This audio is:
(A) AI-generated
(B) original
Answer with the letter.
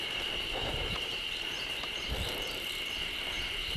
A